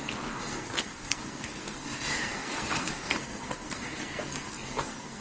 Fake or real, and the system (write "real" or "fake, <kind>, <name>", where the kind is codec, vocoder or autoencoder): fake, codec, SNAC